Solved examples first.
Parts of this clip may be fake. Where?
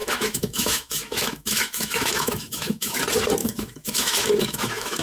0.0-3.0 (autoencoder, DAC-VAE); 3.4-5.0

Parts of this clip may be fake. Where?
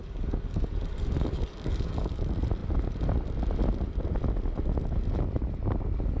0.0-2.2 (codec, DAC)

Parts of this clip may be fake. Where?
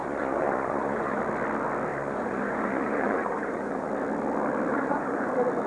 0.0-1.2 (vocoder, Vocos); 1.9-3.9; 4.7-5.3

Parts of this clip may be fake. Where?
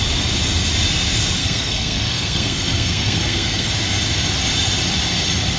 1.4-3.7 (codec, SNAC)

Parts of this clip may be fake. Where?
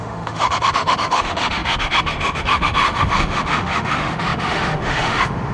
0.0-5.5 (autoencoder, DAC-VAE)